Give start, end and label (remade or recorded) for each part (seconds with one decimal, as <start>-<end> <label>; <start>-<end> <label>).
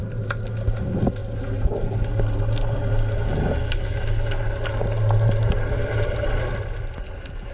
0.0-7.5 recorded